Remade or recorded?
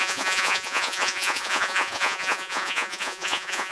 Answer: remade